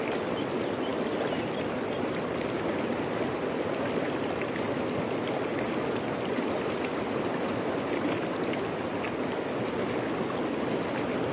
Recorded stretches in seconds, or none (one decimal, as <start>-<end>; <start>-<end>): 0.0-11.3